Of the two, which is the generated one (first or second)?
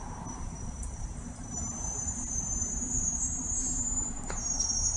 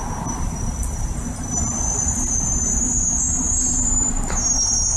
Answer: first